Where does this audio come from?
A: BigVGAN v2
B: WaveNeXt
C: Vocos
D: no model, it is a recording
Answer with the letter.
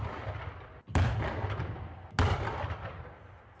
D